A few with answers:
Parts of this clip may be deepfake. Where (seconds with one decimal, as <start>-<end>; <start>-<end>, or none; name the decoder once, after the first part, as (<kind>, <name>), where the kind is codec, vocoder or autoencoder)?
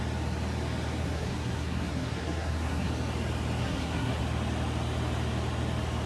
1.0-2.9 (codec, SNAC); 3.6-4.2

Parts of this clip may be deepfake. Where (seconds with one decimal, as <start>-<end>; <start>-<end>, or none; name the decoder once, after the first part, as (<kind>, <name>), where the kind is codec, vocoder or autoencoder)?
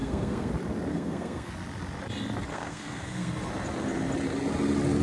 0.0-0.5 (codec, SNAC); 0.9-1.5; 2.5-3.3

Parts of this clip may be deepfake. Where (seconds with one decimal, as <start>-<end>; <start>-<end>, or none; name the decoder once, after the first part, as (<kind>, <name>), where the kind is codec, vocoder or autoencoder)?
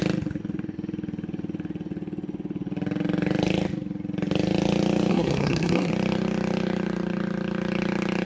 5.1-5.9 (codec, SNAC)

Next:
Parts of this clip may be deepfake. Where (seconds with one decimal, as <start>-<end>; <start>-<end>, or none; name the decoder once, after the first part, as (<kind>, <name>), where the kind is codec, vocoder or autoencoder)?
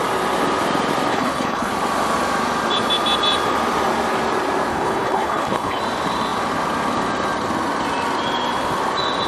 1.1-1.7 (codec, HILCodec); 4.7-5.8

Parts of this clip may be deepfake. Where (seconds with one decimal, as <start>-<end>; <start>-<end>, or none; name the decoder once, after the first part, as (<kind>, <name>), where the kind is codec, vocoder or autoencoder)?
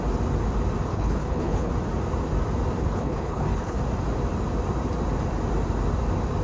0.9-1.7 (codec, HILCodec); 2.8-3.8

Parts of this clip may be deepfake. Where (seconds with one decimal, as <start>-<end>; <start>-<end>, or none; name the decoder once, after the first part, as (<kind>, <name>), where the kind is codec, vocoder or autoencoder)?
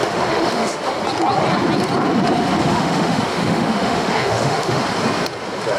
0.0-1.0 (autoencoder, DAC-VAE); 2.6-4.8